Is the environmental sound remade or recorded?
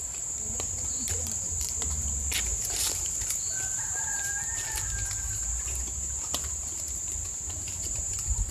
remade